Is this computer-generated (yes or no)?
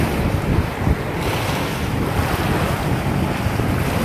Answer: no